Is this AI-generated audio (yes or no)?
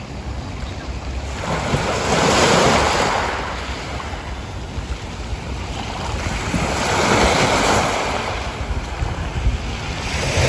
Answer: no